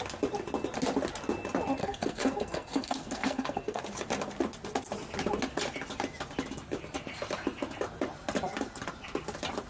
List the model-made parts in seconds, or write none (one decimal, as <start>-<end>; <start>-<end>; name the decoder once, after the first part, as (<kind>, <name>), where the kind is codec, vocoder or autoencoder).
1.8-3.8 (codec, SNAC)